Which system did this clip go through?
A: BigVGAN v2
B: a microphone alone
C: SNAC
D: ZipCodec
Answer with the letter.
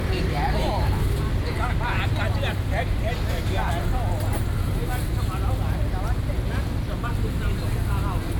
B